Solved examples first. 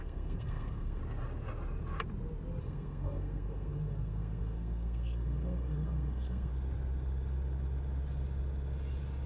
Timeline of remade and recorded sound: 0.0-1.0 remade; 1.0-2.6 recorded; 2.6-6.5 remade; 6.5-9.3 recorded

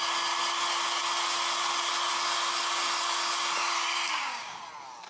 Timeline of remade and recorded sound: 0.0-4.1 recorded; 4.1-4.6 remade; 4.6-5.1 recorded